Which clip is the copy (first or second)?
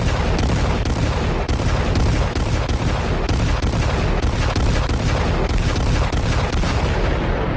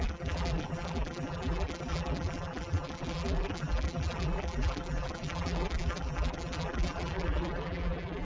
second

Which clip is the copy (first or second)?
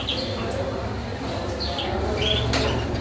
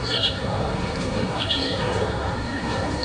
second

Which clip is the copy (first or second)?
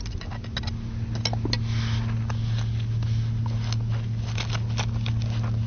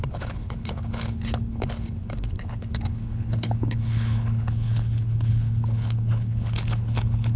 second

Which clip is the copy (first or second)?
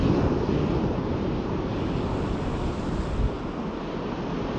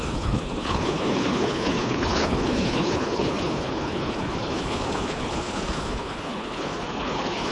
second